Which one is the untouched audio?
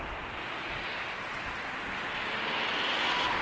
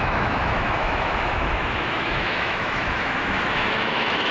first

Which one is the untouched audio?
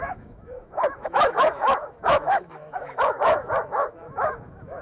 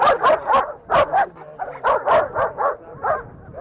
second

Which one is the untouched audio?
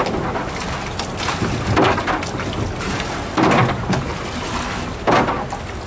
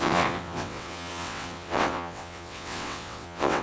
first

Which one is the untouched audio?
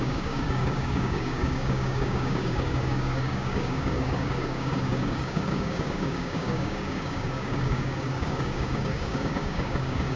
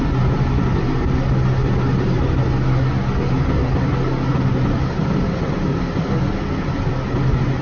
second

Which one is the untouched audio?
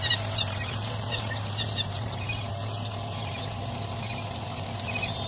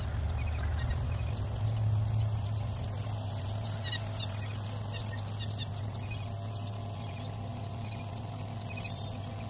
second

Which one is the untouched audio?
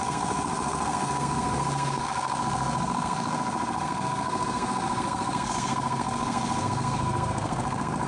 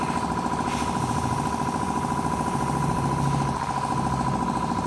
second